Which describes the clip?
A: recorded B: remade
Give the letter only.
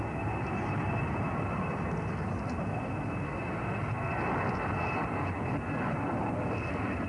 A